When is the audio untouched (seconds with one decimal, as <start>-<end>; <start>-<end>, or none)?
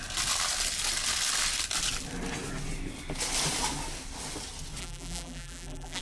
0.0-4.8